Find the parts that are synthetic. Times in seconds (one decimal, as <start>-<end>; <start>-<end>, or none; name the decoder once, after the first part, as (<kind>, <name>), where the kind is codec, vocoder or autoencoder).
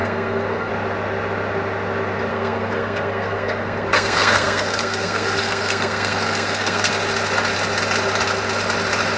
0.0-0.7 (codec, SNAC); 2.3-6.9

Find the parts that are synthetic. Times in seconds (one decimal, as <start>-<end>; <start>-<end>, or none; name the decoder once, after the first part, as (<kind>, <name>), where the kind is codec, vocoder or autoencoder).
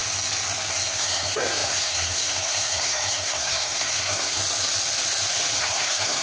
0.7-4.4 (codec, SNAC); 5.6-6.2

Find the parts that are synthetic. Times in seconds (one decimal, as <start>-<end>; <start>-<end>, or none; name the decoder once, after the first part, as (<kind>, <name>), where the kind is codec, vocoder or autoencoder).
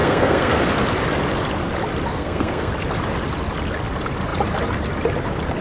0.0-0.6 (codec, SNAC); 2.1-2.7